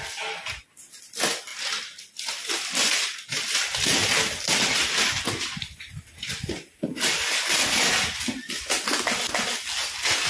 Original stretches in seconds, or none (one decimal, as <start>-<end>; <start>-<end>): 0.0-2.8; 3.4-10.3